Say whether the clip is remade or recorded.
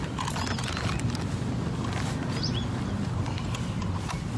recorded